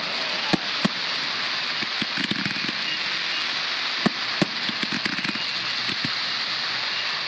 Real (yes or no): yes